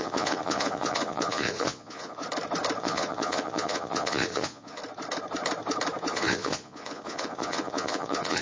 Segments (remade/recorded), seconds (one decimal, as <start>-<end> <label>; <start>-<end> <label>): 0.0-2.2 remade; 2.2-2.8 recorded; 2.8-4.8 remade; 4.8-6.1 recorded; 6.1-8.4 remade